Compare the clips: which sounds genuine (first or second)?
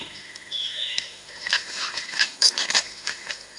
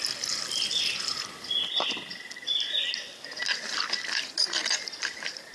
second